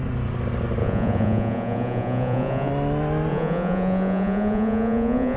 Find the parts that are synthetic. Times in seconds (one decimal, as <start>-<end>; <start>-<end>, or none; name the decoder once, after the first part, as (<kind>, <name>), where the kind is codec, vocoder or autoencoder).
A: 0.8-2.7 (vocoder, Vocos); 3.3-5.4